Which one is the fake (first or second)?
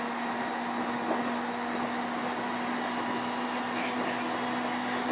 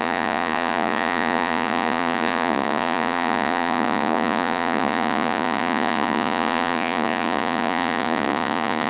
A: second